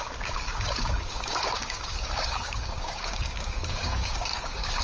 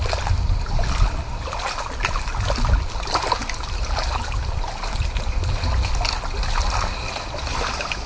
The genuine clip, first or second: second